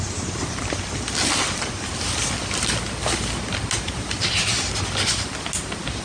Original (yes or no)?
yes